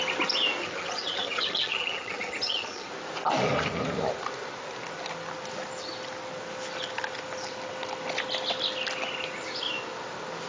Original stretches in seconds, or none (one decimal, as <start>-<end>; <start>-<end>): 0.0-0.6; 2.9-10.5